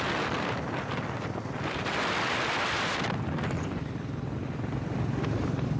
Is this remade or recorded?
remade